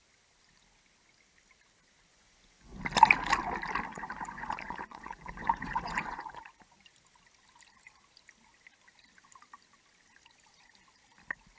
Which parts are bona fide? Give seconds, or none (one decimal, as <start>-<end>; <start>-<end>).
0.0-2.1; 2.8-3.9; 6.4-11.6